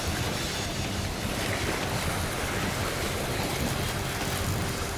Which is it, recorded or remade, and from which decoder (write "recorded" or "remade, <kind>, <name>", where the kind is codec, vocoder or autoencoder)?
recorded